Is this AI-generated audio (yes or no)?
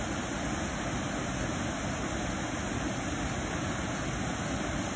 no